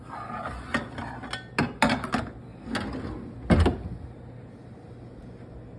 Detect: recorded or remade recorded